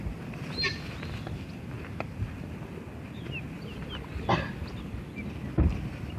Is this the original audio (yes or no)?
yes